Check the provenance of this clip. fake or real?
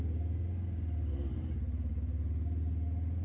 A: real